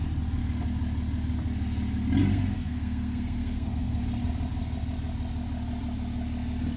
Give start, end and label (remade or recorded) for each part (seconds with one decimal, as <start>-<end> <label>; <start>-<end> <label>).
0.0-2.3 recorded; 2.3-4.0 remade; 4.0-6.8 recorded